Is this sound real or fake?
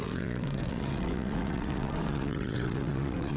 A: fake